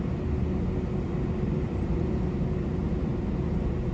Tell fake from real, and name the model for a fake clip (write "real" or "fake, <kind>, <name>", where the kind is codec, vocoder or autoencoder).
real